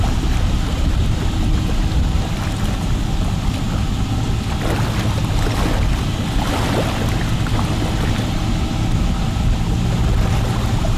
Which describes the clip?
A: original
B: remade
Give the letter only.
A